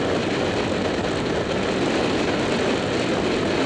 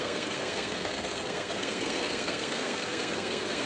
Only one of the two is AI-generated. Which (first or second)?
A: second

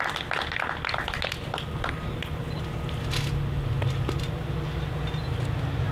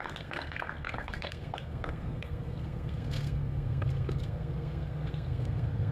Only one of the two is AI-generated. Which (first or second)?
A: second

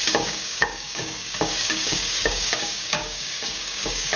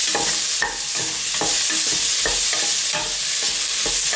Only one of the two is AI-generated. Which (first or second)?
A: first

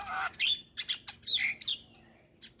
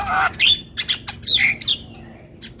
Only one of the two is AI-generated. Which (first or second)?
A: first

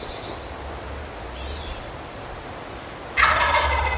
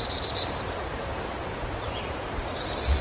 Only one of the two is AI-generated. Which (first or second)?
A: second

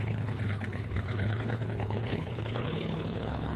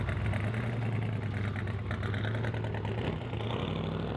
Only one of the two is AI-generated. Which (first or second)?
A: first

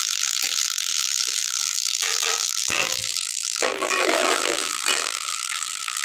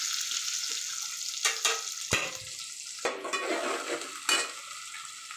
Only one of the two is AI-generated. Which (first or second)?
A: first